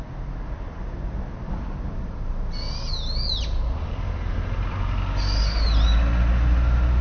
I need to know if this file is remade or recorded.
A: recorded